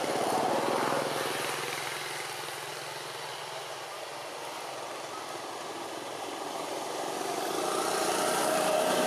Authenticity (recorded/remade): recorded